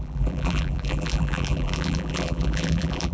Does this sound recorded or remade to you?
remade